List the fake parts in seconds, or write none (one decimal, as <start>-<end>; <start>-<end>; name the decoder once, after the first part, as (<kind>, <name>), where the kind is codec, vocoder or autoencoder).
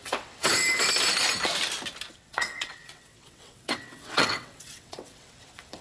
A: 0.0-0.5 (vocoder, WaveNeXt); 2.1-5.8